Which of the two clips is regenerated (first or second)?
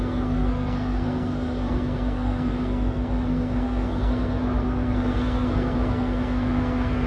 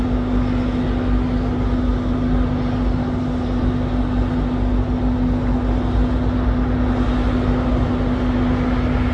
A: first